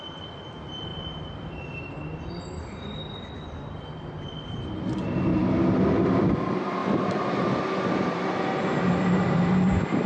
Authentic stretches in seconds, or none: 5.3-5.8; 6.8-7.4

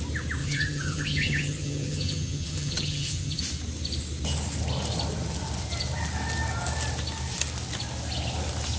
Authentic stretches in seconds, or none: 0.0-0.4; 3.4-8.8

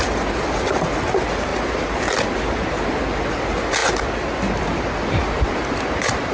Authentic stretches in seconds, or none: 0.0-6.3

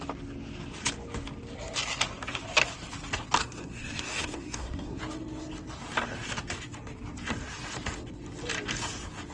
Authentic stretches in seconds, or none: 0.0-3.4; 5.0-9.3

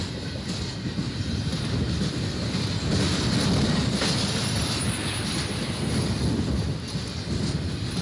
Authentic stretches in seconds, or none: 0.0-8.0

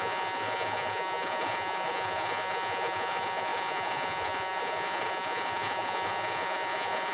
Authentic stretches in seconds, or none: none